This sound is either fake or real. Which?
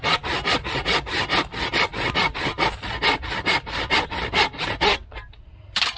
real